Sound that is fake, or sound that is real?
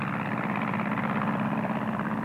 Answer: real